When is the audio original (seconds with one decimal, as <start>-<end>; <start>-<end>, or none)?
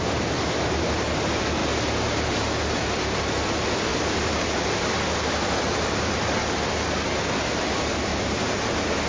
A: 0.0-1.6; 2.6-8.1